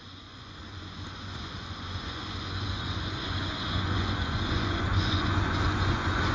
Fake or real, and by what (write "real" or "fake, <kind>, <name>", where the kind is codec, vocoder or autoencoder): fake, vocoder, Vocos